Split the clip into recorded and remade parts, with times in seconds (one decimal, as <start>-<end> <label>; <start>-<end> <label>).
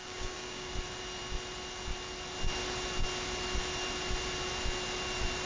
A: 0.0-0.7 remade; 0.7-5.5 recorded